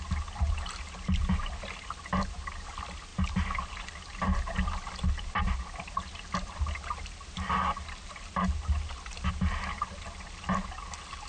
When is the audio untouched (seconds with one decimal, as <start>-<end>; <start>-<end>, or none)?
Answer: 0.0-11.3